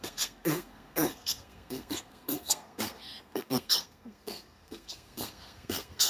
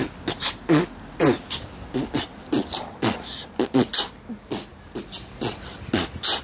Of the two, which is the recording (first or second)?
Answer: second